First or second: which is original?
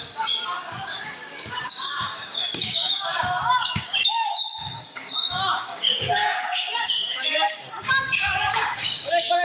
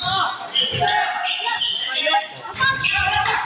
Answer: second